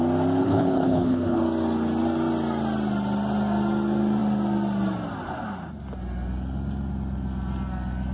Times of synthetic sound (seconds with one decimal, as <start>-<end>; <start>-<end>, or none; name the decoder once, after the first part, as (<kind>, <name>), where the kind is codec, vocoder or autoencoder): 0.4-1.4 (codec, HILCodec)